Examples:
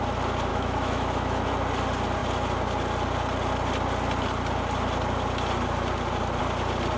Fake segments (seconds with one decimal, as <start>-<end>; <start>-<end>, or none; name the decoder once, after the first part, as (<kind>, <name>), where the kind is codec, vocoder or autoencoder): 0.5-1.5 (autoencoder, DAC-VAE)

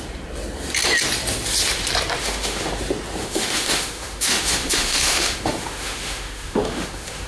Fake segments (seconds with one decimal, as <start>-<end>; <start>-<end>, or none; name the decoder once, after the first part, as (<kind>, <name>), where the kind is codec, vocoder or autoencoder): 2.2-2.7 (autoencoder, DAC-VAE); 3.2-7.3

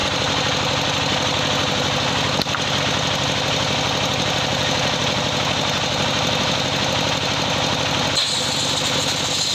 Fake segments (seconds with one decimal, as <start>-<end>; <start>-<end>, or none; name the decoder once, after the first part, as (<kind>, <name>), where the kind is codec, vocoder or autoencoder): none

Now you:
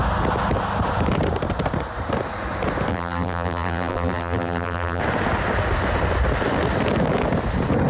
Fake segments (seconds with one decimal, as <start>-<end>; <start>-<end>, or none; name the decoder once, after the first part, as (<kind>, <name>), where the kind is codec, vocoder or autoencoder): 2.9-5.0 (vocoder, BigVGAN v2)

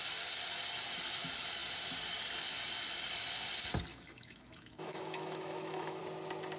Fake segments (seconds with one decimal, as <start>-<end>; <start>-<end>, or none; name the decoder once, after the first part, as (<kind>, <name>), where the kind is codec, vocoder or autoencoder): 3.9-6.0 (autoencoder, DAC-VAE)

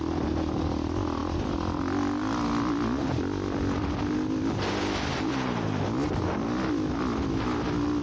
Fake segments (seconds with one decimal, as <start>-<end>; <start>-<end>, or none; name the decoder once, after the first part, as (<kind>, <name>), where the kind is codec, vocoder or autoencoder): none

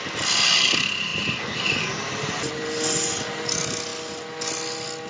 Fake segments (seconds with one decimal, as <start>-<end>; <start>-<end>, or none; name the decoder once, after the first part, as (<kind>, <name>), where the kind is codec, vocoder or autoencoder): none